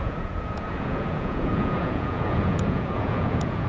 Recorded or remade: remade